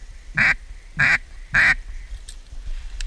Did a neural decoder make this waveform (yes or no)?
yes